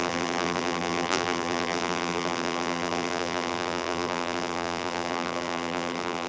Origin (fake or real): fake